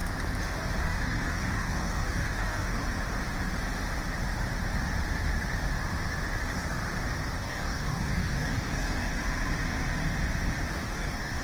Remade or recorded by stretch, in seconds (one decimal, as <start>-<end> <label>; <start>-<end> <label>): 0.0-0.8 recorded; 0.8-2.8 remade; 2.8-7.4 recorded; 7.4-9.1 remade; 9.1-10.7 recorded; 10.7-11.4 remade